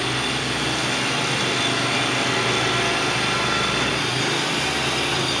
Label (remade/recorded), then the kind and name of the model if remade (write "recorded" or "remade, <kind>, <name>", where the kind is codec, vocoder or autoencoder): recorded